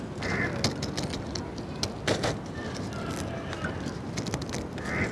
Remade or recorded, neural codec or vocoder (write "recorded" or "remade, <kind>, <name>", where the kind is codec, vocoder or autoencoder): recorded